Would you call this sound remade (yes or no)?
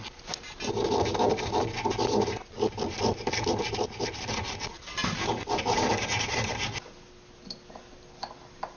no